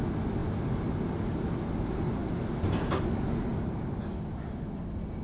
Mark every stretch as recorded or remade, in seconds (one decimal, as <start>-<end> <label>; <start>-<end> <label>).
0.0-5.2 recorded

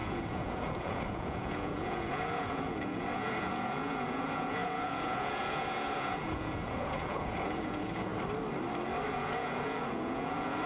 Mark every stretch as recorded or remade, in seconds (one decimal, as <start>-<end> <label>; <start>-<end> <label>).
0.0-8.1 remade; 8.1-9.1 recorded; 9.1-10.7 remade

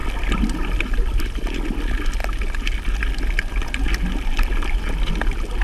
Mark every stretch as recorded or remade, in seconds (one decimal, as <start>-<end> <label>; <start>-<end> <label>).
0.0-5.6 recorded

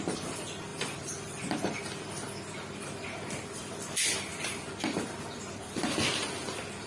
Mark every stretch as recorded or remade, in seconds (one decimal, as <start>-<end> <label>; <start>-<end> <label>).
0.0-0.7 recorded; 0.7-1.8 remade; 1.8-6.9 recorded

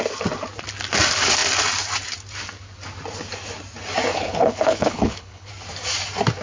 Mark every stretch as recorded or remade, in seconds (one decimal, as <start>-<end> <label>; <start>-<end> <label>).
0.0-4.1 recorded; 4.1-5.5 remade; 5.5-6.4 recorded

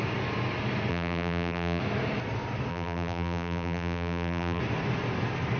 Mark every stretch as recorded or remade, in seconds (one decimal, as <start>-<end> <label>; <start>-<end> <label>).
0.0-0.9 recorded; 0.9-1.8 remade; 1.8-2.7 recorded; 2.7-4.6 remade; 4.6-5.6 recorded

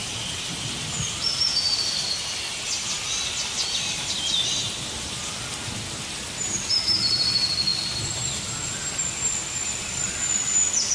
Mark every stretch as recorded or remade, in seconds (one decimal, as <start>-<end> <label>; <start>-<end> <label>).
0.0-10.9 recorded

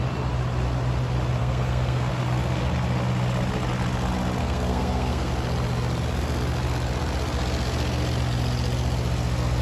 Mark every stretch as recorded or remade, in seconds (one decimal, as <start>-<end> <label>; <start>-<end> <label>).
0.0-1.4 recorded; 1.4-2.1 remade; 2.1-4.4 recorded; 4.4-5.3 remade; 5.3-9.6 recorded